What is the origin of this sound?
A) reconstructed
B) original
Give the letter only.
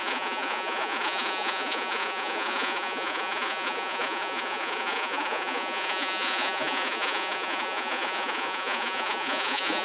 A